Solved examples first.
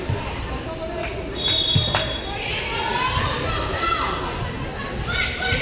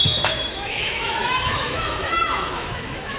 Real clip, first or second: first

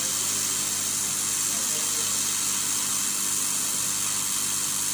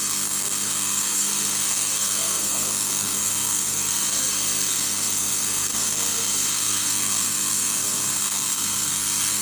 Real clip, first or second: first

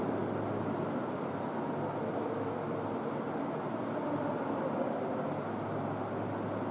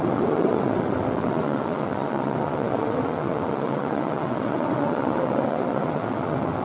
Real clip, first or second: first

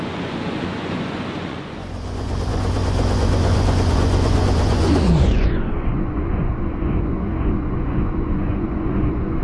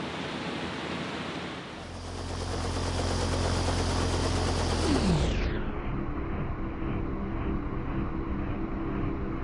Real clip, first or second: second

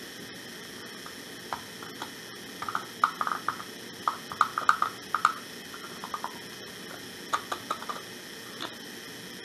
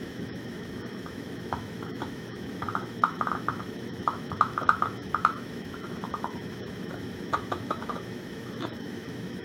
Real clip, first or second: first